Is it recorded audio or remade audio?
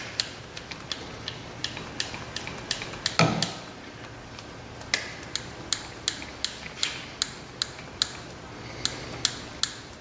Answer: recorded